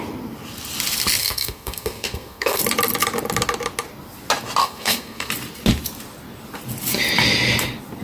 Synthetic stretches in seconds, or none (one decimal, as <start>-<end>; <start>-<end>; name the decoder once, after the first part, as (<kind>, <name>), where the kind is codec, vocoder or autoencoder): 1.2-2.6 (codec, SNAC); 4.6-5.3